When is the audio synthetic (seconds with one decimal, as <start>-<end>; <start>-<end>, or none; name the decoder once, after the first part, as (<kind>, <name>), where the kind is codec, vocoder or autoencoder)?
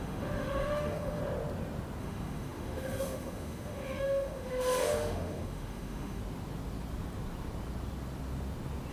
0.0-1.2 (autoencoder, DAC-VAE); 2.0-6.2